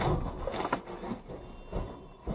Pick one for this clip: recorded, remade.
recorded